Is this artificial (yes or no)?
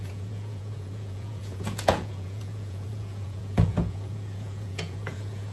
yes